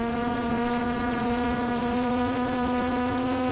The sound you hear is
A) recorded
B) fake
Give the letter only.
B